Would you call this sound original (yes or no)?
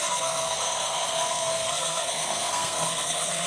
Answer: no